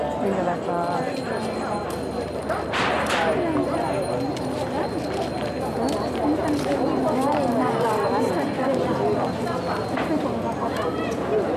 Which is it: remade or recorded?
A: recorded